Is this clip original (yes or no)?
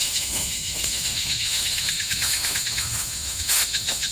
no